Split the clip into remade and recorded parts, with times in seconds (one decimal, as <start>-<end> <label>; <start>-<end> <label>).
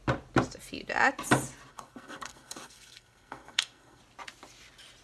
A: 0.0-1.7 recorded; 1.7-4.0 remade; 4.0-5.0 recorded